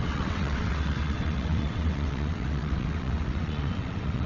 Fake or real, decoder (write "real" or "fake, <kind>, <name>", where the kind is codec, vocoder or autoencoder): fake, vocoder, WaveNeXt